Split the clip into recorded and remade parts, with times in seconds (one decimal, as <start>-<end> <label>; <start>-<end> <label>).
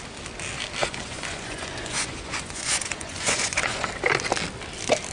0.0-0.8 recorded; 0.8-3.9 remade; 3.9-5.1 recorded